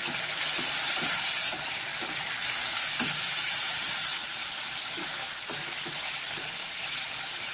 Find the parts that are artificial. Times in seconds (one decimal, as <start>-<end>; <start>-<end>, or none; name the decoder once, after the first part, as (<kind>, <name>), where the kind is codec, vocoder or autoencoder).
0.7-1.9 (vocoder, BigVGAN v2); 3.2-5.2